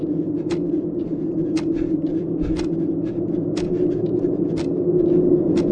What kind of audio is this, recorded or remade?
recorded